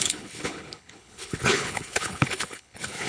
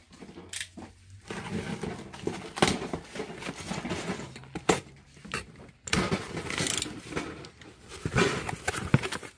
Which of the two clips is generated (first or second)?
first